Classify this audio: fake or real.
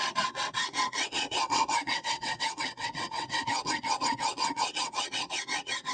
fake